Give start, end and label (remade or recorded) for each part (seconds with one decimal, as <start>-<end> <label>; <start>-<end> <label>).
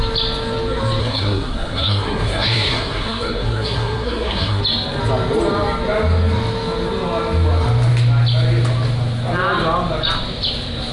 0.0-1.0 recorded; 1.0-4.6 remade; 4.6-10.9 recorded